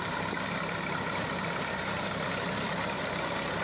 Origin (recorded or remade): remade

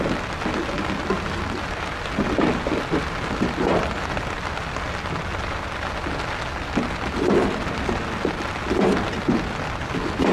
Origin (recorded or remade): recorded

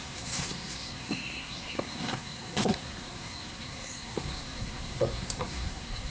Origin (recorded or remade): remade